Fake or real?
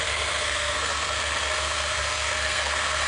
fake